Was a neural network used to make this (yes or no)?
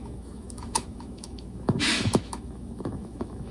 yes